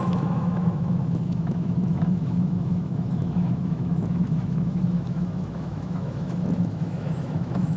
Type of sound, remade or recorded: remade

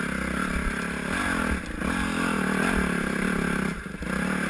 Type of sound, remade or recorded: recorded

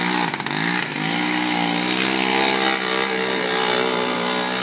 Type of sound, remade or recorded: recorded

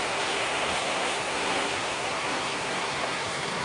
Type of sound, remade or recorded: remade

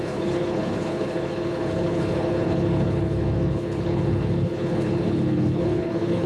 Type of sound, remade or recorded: remade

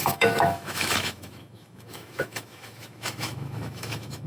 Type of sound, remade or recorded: remade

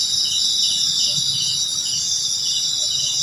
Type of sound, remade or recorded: recorded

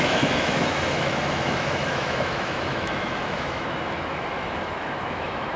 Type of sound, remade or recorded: remade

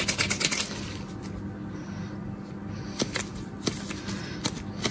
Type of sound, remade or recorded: recorded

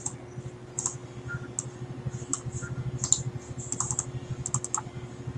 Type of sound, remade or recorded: recorded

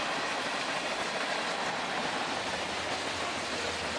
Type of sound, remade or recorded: recorded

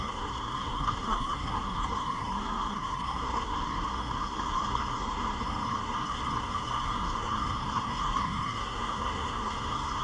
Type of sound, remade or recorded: remade